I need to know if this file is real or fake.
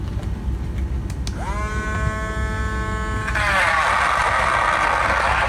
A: real